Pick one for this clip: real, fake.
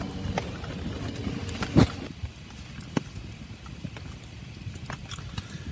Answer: real